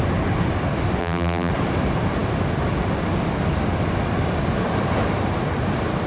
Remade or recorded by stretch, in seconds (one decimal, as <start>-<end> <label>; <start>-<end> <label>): 0.0-1.0 recorded; 1.0-1.5 remade; 1.5-6.1 recorded